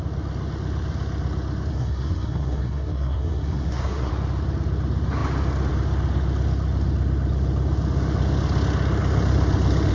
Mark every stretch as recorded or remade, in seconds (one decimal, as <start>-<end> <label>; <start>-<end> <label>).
0.0-1.7 recorded; 1.7-4.1 remade; 4.1-9.9 recorded